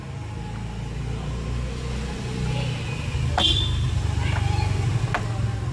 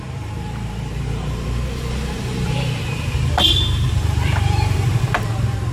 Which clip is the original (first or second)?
first